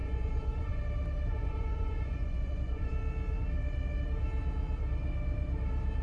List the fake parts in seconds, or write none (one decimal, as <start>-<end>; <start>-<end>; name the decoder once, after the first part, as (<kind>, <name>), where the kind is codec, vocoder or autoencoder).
0.0-0.8 (vocoder, Vocos); 1.3-2.9